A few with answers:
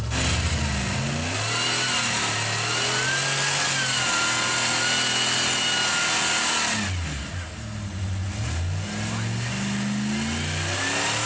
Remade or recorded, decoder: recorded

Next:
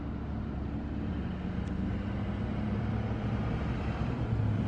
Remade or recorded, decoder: recorded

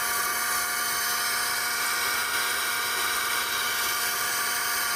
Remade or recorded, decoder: recorded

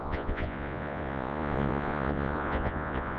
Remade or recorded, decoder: remade, vocoder, Vocos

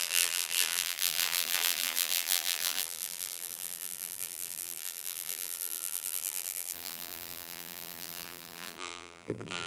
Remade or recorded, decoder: remade, vocoder, BigVGAN v2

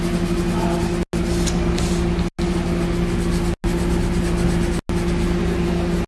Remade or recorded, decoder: recorded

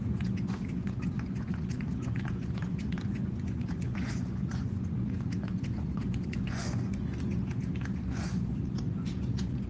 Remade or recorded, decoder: remade, vocoder, Vocos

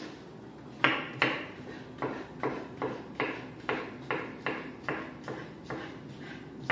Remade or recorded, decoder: recorded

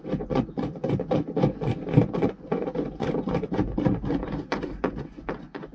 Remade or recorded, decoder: remade, vocoder, Vocos